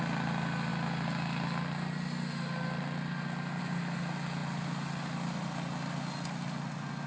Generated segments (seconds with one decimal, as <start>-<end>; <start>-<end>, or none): none